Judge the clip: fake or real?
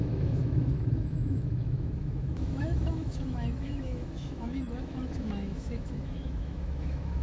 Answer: fake